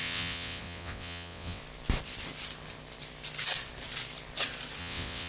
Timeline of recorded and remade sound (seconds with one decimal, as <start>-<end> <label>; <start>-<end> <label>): 0.0-1.6 remade; 1.6-4.8 recorded; 4.8-5.3 remade

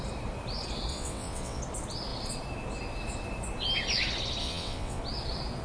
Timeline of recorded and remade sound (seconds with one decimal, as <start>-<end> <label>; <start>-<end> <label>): 0.0-0.9 recorded; 0.9-1.6 remade; 1.6-4.4 recorded; 4.4-5.0 remade; 5.0-5.6 recorded

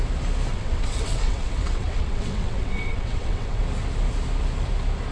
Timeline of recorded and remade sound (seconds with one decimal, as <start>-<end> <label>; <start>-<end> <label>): 0.0-0.5 recorded; 0.5-3.6 remade; 3.6-5.1 recorded

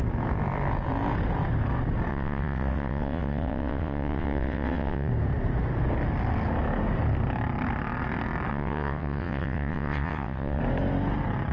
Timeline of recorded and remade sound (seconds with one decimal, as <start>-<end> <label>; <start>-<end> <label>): 0.0-2.1 recorded; 2.1-5.1 remade; 5.1-8.5 recorded; 8.5-10.6 remade; 10.6-11.5 recorded

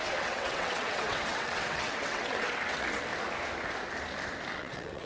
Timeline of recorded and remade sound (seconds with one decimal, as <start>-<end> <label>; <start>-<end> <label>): 0.0-3.1 remade; 3.1-4.5 recorded; 4.5-5.1 remade

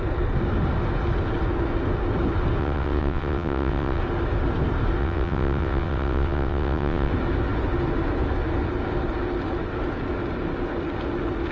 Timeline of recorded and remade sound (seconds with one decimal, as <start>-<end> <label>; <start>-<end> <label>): 0.0-2.6 recorded; 2.6-4.0 remade; 4.0-5.0 recorded; 5.0-7.1 remade; 7.1-11.5 recorded